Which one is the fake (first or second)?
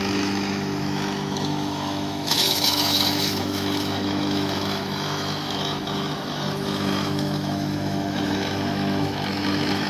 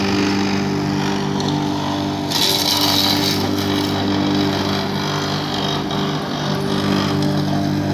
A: first